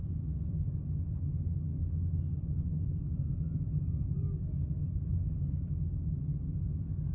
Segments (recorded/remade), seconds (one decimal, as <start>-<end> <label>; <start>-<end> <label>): 0.0-7.1 recorded